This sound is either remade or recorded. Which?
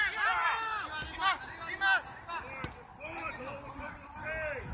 recorded